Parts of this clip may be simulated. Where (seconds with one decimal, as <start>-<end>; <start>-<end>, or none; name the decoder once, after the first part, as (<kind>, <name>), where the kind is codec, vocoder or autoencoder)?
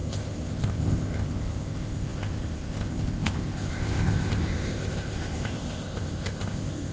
0.0-6.9 (codec, ZipCodec)